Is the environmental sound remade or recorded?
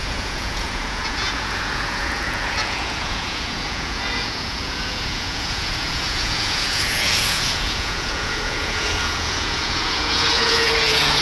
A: remade